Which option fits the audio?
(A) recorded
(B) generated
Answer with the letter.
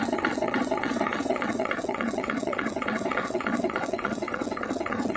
B